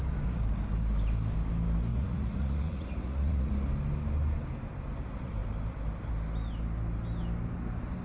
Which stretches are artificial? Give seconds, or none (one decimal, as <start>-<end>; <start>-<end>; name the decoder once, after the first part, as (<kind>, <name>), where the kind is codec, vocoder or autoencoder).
1.9-3.5 (vocoder, Vocos)